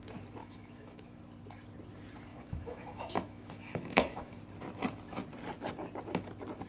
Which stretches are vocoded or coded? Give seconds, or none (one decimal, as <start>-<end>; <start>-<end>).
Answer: 0.4-1.2; 2.3-4.4